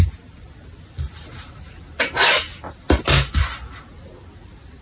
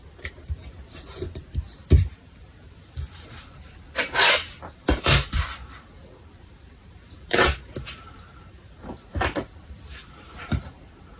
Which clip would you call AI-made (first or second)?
second